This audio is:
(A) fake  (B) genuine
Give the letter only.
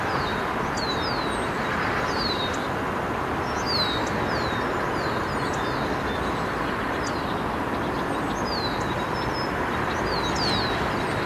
B